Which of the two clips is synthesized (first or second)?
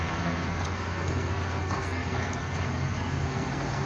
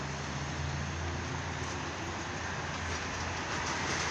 first